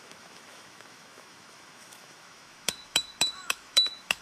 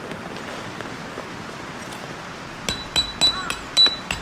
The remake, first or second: first